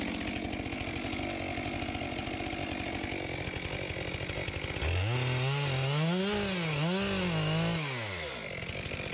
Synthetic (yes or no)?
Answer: no